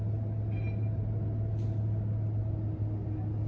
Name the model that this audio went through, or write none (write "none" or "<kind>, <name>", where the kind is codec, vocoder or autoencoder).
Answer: none